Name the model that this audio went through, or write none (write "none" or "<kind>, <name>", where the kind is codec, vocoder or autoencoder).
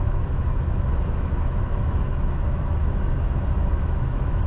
autoencoder, DAC-VAE